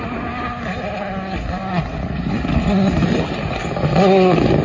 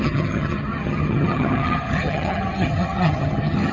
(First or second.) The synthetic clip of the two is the second